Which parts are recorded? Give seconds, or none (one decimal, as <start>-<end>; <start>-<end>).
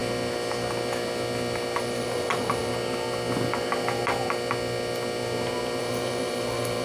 0.0-1.8; 2.7-5.8